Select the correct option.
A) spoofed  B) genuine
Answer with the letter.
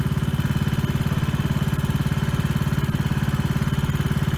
B